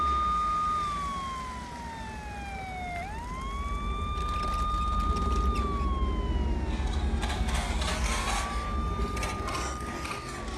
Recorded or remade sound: recorded